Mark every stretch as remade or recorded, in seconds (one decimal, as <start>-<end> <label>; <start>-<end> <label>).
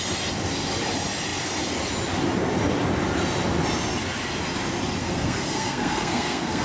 0.0-5.0 recorded; 5.0-6.6 remade